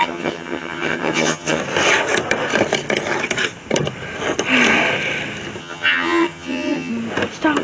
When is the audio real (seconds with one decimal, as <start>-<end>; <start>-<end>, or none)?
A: 1.6-5.6; 6.9-7.6